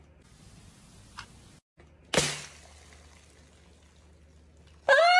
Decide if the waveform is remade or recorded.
recorded